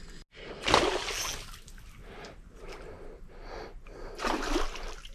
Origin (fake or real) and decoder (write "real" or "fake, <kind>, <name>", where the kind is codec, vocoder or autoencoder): real